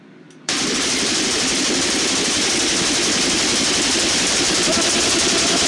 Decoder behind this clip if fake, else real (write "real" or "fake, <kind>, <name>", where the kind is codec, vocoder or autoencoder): fake, vocoder, BigVGAN v2